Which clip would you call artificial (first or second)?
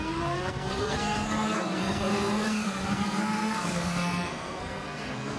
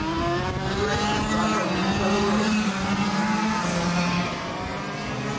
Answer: first